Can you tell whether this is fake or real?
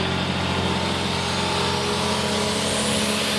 real